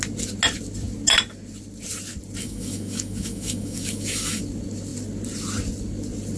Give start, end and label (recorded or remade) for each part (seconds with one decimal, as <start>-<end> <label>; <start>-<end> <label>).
0.0-2.4 recorded; 2.4-4.4 remade; 4.4-6.4 recorded